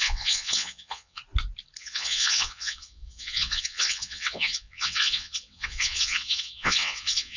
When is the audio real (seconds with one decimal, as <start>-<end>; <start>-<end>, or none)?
1.2-1.8